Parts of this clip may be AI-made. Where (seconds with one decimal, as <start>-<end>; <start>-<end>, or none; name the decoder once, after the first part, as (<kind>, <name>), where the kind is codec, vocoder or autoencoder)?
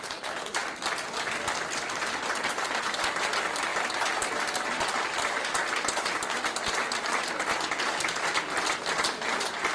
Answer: none